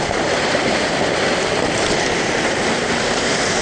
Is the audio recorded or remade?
remade